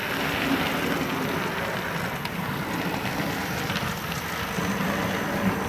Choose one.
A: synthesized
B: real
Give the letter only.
B